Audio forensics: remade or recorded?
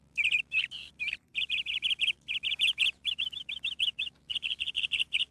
remade